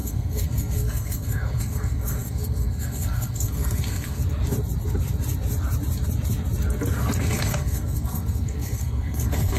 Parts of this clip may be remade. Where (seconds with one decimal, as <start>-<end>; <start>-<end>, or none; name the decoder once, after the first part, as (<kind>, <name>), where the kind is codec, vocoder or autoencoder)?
0.0-4.2 (codec, SNAC); 7.2-9.6